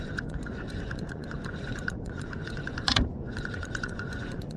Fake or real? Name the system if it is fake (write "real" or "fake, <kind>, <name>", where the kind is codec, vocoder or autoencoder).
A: fake, vocoder, Vocos